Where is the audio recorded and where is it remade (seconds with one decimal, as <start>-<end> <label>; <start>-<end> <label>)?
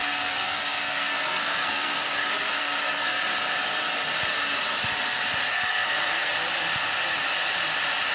0.0-3.2 remade; 3.2-5.5 recorded; 5.5-6.3 remade; 6.3-8.1 recorded